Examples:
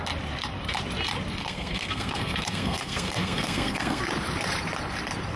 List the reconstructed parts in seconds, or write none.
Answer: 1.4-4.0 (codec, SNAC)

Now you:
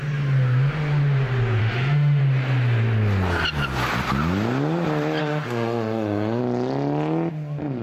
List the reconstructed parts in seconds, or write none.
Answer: 1.6-2.2 (autoencoder, DAC-VAE); 5.2-6.4

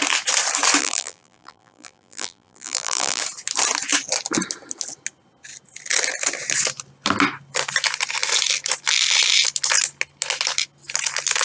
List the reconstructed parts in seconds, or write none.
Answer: 0.8-3.2 (vocoder, BigVGAN v2)

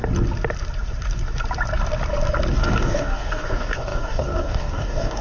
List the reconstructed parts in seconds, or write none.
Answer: 2.5-5.2 (codec, DAC)

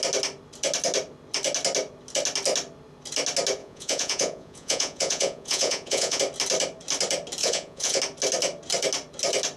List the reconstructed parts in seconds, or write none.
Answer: 3.6-6.2 (vocoder, Vocos); 7.4-8.0